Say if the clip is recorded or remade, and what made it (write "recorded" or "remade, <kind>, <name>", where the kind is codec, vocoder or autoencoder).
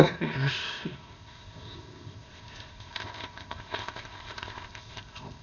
remade, codec, ZipCodec